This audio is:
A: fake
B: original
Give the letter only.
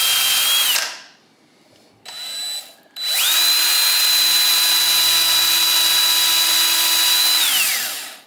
B